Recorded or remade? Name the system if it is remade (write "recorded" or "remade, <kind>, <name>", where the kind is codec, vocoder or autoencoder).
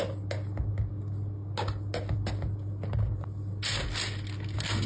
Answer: recorded